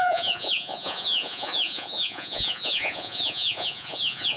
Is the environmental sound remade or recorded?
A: remade